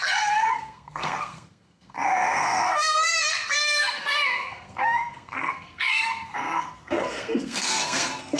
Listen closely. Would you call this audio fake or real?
fake